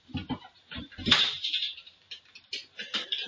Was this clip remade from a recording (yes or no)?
yes